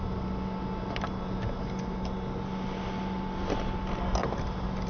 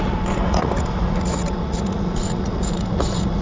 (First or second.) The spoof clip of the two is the second